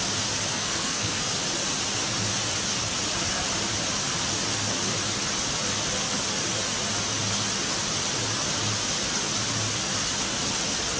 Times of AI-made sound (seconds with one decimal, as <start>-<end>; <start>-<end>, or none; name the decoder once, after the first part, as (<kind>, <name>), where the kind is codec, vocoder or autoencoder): 0.5-1.4 (codec, SNAC)